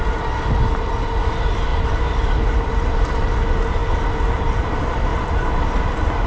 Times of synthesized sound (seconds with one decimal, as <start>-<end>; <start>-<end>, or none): none